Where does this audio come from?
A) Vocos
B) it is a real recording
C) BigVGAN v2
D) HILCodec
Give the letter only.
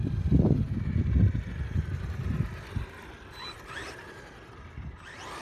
C